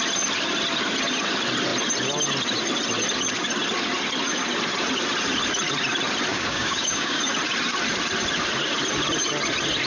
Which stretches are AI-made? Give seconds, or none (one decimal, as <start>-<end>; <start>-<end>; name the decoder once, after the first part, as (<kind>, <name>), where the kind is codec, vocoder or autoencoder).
6.3-7.2 (codec, DAC)